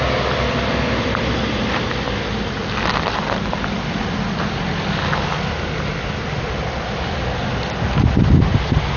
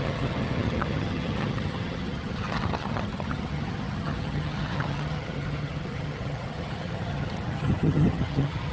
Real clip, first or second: first